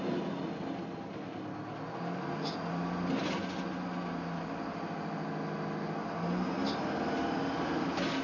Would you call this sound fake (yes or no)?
no